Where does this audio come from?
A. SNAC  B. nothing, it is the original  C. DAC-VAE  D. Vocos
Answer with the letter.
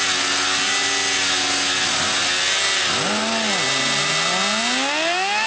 B